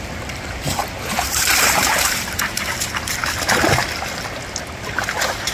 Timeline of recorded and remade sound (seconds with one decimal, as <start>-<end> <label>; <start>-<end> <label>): 0.0-3.2 remade; 3.2-4.7 recorded; 4.7-5.5 remade